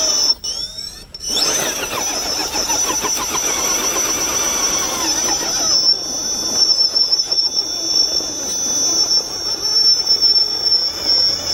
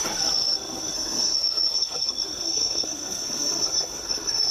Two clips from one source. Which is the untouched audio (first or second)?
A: first